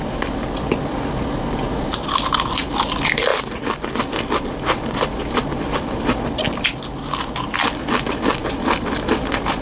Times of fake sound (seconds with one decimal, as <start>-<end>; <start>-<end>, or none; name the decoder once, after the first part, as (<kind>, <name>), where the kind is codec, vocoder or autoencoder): none